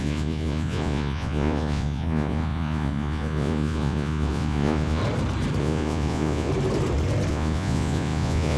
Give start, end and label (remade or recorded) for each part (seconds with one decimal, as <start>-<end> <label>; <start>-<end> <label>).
0.0-5.0 remade; 5.0-5.6 recorded; 5.6-6.5 remade; 6.5-7.3 recorded; 7.3-8.6 remade

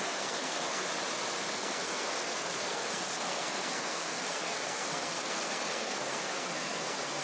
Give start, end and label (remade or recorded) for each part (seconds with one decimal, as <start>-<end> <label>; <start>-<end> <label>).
0.0-0.8 remade; 0.8-1.5 recorded; 1.5-7.2 remade

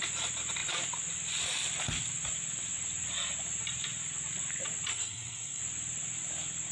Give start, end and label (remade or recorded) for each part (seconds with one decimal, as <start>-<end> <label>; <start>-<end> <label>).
0.0-4.9 recorded; 4.9-5.6 remade; 5.6-6.7 recorded

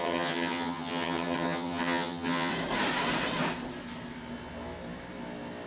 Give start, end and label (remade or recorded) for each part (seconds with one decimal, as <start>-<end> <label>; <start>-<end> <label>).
0.0-2.5 remade; 2.5-5.7 recorded

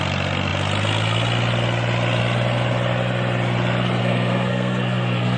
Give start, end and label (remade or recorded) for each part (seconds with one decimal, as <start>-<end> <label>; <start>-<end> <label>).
0.0-4.0 recorded; 4.0-5.4 remade

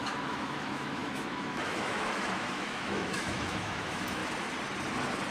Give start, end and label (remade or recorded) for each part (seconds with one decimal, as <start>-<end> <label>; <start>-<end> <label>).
0.0-4.2 remade; 4.2-5.3 recorded

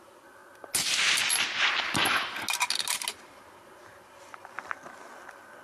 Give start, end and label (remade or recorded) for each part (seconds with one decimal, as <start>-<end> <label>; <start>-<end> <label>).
0.0-5.6 recorded

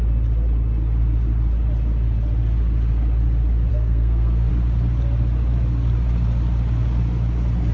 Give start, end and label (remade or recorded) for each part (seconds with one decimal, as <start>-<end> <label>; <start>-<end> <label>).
0.0-3.7 recorded; 3.7-4.5 remade; 4.5-7.7 recorded